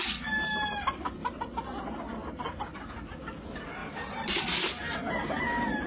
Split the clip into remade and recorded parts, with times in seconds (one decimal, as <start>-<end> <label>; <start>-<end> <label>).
0.0-1.2 recorded; 1.2-1.8 remade; 1.8-3.8 recorded; 3.8-4.4 remade; 4.4-5.9 recorded